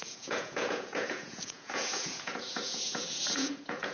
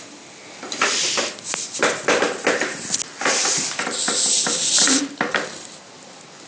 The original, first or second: second